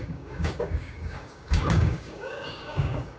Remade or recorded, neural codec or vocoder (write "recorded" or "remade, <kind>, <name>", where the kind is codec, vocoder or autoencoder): remade, codec, DAC